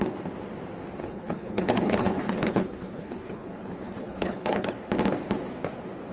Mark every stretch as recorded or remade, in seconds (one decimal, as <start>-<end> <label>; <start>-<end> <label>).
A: 0.0-1.0 recorded; 1.0-4.7 remade; 4.7-6.1 recorded